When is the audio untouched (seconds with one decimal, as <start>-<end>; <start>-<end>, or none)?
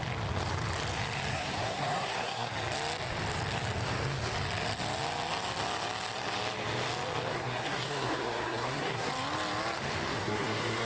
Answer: 0.0-1.3; 2.5-7.3; 9.1-10.1